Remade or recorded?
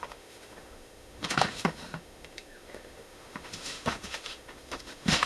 remade